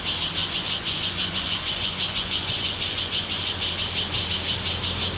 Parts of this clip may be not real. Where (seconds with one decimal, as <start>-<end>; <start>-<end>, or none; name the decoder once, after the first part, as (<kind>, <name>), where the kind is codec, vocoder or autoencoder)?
0.4-3.5 (vocoder, Vocos)